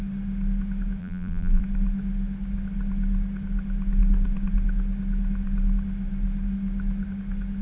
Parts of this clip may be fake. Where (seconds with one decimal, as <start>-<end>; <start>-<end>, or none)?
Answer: 1.0-1.6